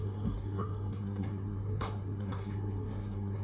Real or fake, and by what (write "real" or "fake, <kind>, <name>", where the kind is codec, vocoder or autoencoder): fake, codec, SNAC